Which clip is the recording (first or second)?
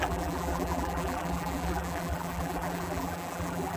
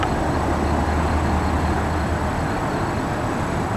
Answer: second